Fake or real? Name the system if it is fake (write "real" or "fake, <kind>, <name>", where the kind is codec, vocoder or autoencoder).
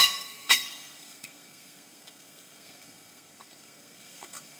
fake, codec, SNAC